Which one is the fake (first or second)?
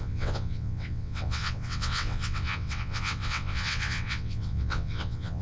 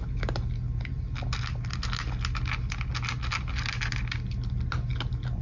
first